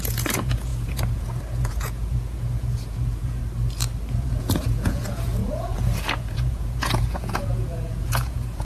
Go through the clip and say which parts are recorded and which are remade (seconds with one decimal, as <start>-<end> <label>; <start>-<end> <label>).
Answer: 0.0-3.4 remade; 3.4-4.1 recorded; 4.1-8.6 remade